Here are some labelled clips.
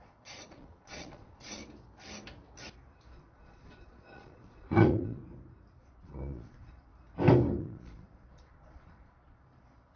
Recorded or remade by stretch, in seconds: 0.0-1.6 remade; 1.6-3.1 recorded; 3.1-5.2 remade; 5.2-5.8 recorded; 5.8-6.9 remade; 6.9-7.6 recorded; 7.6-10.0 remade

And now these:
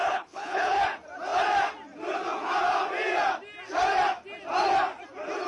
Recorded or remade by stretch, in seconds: 0.0-0.8 remade; 0.8-5.5 recorded

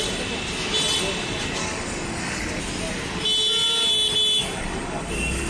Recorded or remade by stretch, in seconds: 0.0-1.6 recorded; 1.6-2.6 remade; 2.6-4.4 recorded; 4.4-5.5 remade

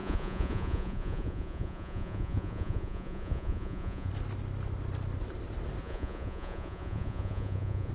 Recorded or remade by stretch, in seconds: 0.0-4.1 remade; 4.1-5.8 recorded; 5.8-7.9 remade

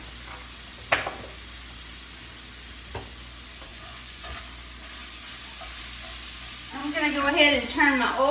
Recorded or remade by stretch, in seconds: 0.0-3.7 recorded; 3.7-4.4 remade; 4.4-8.3 recorded